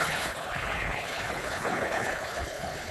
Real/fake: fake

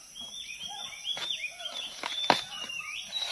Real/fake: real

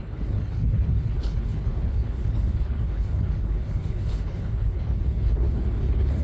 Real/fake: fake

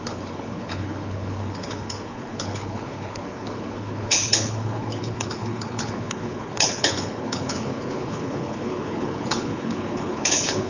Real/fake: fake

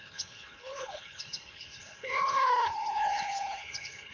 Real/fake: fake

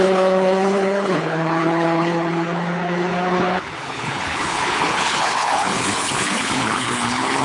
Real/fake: fake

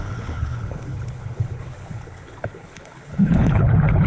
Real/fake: fake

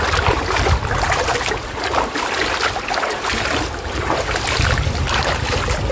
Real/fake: real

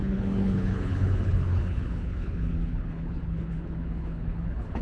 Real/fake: fake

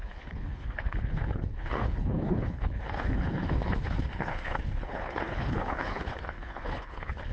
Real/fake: fake